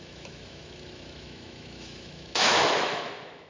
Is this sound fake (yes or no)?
yes